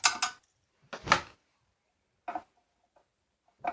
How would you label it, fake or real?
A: real